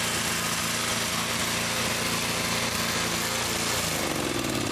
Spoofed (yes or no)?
no